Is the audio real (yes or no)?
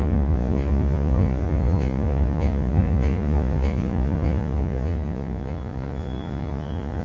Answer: no